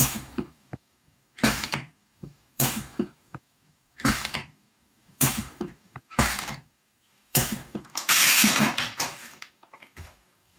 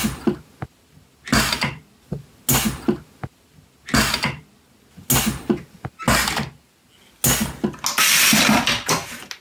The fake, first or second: first